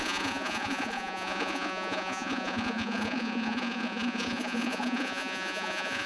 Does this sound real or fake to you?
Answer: fake